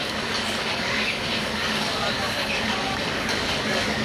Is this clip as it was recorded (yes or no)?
no